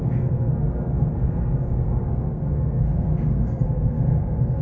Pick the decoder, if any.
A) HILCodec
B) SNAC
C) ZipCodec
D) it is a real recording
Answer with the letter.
B